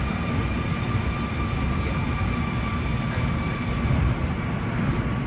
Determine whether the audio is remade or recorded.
recorded